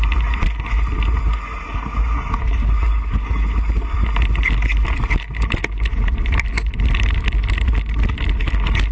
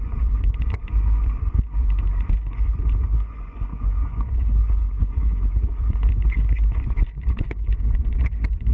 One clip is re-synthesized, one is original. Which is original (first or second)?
first